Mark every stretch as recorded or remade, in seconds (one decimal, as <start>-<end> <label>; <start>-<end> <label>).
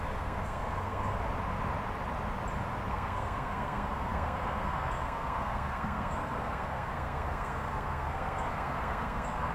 0.0-1.1 remade; 1.1-2.9 recorded; 2.9-9.5 remade